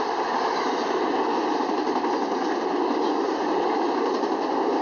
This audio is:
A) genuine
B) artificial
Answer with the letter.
A